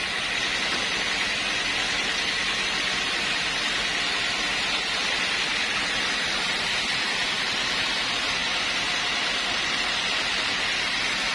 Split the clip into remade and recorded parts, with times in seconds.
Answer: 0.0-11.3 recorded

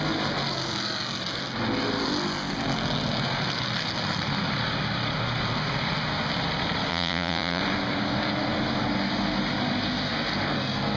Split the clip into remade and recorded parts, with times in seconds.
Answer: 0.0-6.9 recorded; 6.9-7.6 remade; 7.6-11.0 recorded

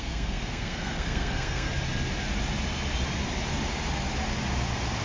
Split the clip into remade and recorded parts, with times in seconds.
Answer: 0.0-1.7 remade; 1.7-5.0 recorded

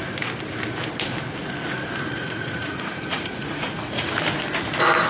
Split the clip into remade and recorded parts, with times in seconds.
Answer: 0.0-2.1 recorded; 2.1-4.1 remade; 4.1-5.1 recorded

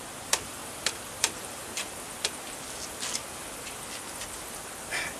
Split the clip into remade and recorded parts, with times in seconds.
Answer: 0.0-0.6 remade; 0.6-1.2 recorded; 1.2-1.8 remade; 1.8-5.2 recorded

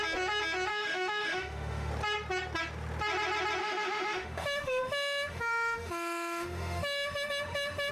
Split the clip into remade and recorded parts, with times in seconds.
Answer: 0.0-0.7 recorded; 0.7-1.9 remade; 1.9-3.6 recorded; 3.6-7.9 remade